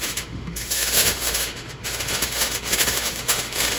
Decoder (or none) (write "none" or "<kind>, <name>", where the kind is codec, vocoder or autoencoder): autoencoder, DAC-VAE